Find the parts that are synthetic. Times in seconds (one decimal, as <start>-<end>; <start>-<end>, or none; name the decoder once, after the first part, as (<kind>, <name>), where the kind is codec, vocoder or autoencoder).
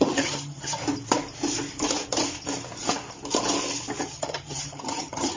0.0-0.8 (vocoder, HiFi-GAN); 4.0-5.4